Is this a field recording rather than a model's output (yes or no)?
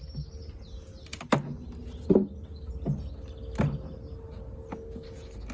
yes